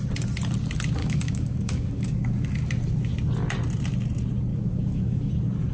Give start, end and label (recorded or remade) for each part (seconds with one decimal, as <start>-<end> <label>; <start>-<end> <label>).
0.0-1.0 recorded; 1.0-2.5 remade; 2.5-4.5 recorded; 4.5-5.3 remade; 5.3-5.7 recorded